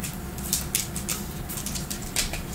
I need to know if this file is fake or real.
real